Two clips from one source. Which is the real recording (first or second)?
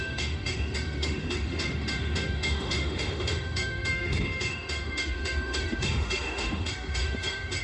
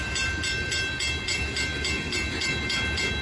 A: second